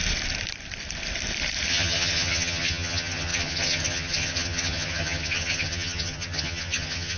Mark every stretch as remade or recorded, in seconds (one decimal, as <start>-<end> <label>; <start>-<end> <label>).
0.0-1.7 recorded; 1.7-7.2 remade